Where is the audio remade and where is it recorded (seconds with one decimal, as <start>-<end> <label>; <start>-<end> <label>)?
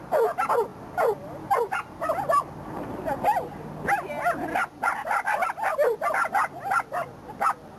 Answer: 0.0-7.8 recorded